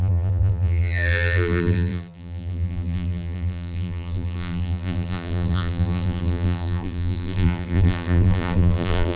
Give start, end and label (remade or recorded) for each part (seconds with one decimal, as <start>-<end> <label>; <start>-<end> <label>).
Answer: 0.0-9.2 remade